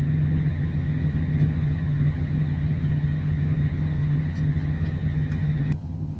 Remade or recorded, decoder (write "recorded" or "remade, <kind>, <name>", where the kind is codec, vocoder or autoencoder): remade, vocoder, HiFi-GAN